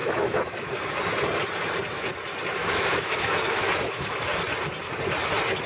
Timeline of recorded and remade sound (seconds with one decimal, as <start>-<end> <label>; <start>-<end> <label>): 0.0-0.7 remade; 0.7-2.6 recorded; 2.6-4.3 remade; 4.3-5.7 recorded